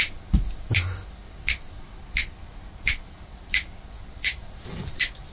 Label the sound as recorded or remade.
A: recorded